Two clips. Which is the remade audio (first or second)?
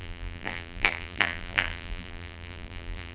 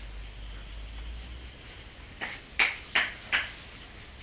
first